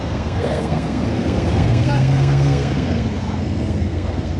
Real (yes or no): no